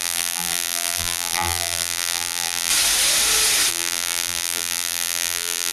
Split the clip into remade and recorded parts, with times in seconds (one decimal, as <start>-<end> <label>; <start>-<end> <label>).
0.0-2.7 remade; 2.7-3.7 recorded; 3.7-5.7 remade